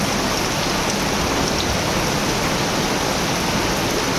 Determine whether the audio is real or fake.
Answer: real